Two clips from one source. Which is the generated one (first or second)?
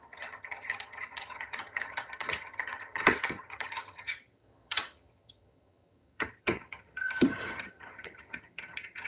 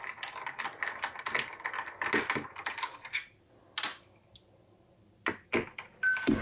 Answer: first